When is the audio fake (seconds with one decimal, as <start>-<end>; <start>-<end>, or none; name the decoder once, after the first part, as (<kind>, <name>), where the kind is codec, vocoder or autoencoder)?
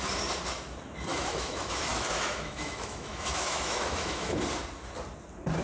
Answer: 1.1-4.4 (autoencoder, DAC-VAE)